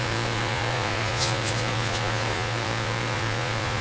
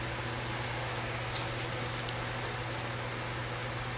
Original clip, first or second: second